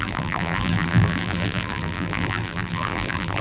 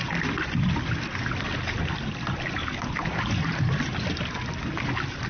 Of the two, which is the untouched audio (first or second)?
second